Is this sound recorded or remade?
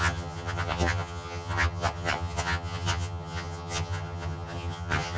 remade